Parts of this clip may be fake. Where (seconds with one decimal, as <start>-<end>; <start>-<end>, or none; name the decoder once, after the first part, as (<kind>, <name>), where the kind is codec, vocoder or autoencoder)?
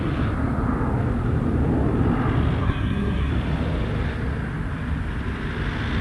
2.6-3.3 (codec, SNAC)